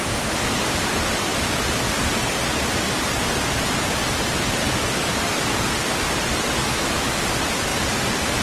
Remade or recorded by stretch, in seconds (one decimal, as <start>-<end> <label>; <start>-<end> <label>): 0.0-6.6 recorded; 6.6-7.2 remade; 7.2-8.4 recorded